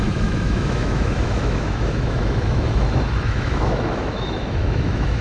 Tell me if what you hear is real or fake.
fake